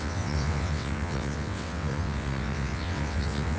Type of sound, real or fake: fake